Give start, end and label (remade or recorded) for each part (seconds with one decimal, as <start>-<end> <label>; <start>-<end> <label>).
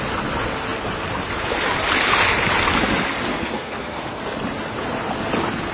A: 0.0-3.3 recorded; 3.3-4.1 remade; 4.1-5.7 recorded